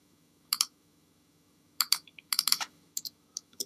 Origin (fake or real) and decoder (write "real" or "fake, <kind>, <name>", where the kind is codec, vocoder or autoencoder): fake, autoencoder, DAC-VAE